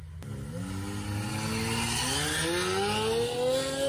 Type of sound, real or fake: real